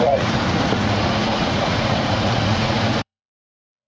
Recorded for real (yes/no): no